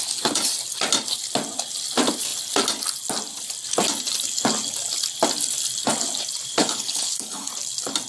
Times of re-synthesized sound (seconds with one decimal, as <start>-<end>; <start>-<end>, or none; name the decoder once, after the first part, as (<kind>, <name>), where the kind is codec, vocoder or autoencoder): 6.6-7.5 (codec, HILCodec)